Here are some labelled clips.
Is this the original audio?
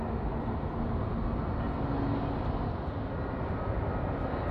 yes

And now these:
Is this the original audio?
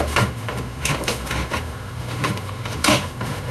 no